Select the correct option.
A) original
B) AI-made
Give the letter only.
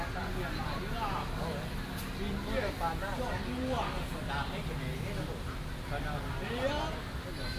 A